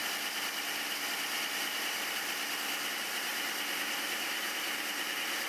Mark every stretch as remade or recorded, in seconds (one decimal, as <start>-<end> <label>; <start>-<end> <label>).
0.0-2.9 recorded; 2.9-3.3 remade; 3.3-3.9 recorded; 3.9-5.5 remade